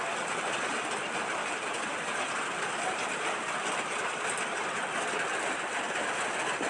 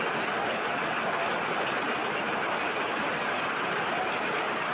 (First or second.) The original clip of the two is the second